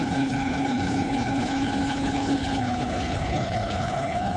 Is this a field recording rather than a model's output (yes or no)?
no